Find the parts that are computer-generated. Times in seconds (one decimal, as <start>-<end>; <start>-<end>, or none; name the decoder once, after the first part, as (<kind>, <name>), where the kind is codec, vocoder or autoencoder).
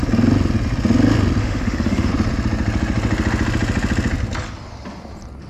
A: 1.4-2.1 (autoencoder, DAC-VAE)